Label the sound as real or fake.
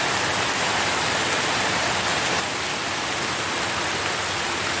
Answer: real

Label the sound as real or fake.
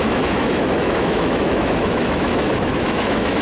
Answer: fake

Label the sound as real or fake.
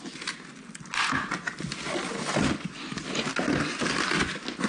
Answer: real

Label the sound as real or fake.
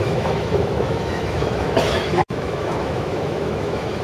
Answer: fake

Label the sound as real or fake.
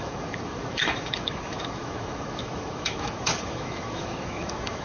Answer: fake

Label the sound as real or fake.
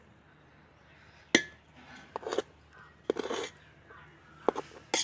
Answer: real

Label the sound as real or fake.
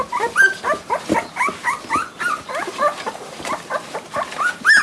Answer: real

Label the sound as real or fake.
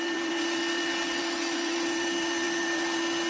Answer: real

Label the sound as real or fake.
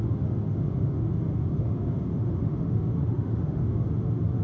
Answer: fake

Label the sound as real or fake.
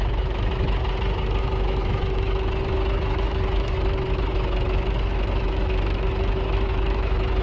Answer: fake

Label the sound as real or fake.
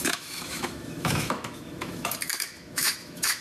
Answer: fake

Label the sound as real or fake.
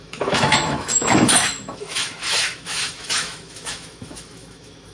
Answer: fake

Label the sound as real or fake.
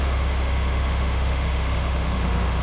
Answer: fake